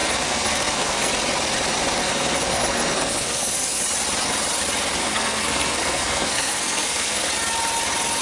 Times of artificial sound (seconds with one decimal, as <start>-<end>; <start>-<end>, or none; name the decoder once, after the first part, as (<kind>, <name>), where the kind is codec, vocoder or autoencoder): 0.0-1.1 (codec, SNAC); 2.0-3.8; 5.0-7.3